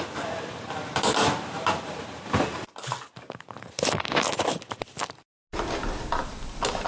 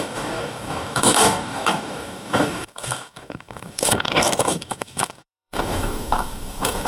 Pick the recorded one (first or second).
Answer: first